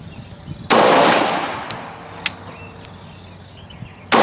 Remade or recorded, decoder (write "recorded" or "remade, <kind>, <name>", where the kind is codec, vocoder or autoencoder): recorded